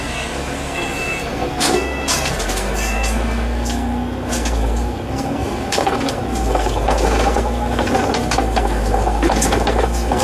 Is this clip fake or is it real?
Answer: fake